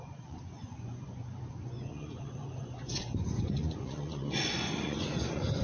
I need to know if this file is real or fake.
fake